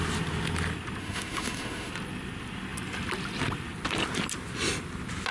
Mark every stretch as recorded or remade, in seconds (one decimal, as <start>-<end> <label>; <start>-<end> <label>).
0.0-1.0 recorded; 1.0-1.9 remade; 1.9-5.3 recorded